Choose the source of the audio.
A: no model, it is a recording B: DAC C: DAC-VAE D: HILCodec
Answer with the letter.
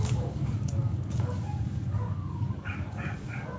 B